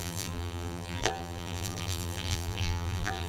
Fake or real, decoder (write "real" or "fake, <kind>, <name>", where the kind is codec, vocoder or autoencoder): fake, vocoder, BigVGAN v2